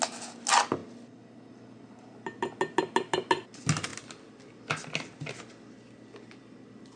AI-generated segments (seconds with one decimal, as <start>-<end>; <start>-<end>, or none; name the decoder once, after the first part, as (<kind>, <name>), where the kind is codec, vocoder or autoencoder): none